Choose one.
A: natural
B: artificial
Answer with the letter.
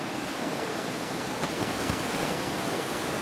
B